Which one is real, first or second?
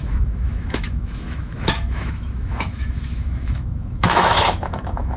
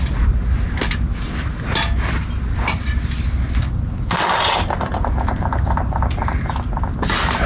second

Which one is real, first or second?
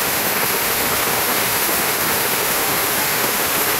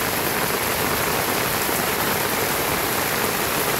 second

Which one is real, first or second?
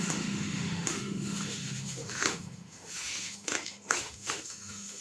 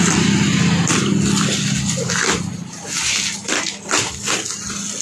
second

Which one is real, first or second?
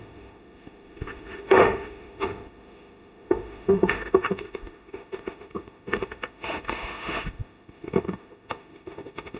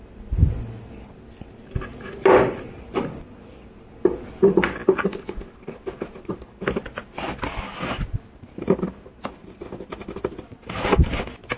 second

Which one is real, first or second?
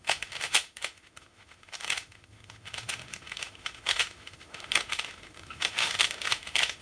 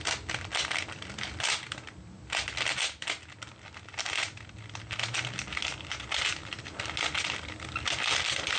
second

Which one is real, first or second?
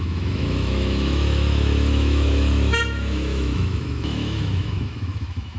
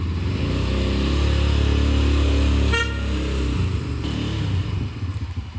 second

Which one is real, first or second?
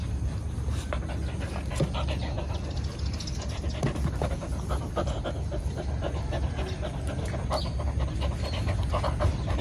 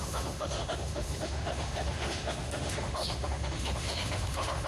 first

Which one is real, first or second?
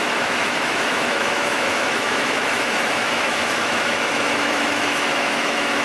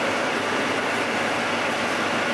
second